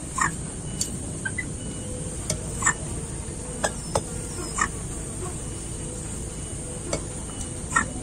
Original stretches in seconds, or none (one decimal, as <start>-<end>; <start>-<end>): 0.0-8.0